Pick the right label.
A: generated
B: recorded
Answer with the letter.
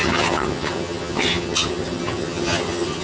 A